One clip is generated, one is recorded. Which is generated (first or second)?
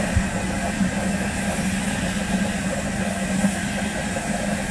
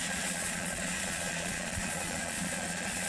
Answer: second